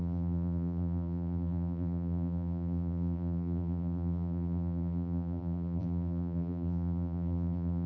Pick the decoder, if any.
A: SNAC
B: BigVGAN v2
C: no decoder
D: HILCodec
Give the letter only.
B